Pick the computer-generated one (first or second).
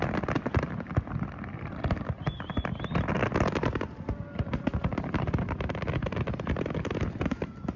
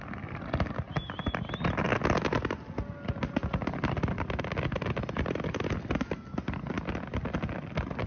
first